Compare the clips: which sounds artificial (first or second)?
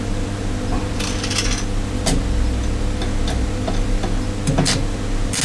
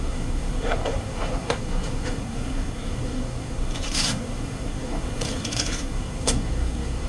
second